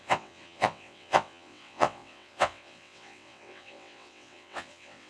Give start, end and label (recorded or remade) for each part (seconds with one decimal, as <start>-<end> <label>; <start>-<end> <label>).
0.0-5.1 remade